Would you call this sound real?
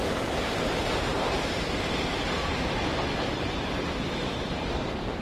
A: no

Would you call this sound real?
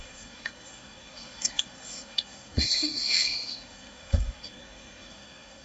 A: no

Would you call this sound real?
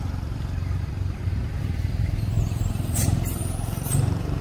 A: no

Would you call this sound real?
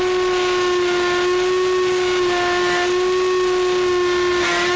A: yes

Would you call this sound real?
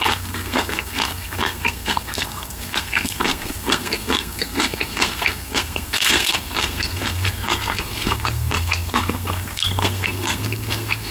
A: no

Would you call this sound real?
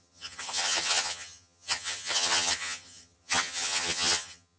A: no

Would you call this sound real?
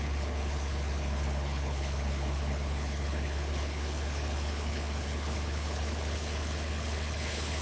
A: no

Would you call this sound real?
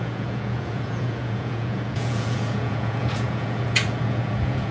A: no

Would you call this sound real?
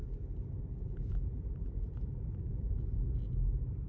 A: yes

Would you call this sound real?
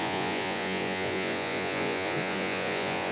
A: no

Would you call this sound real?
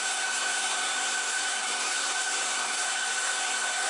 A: no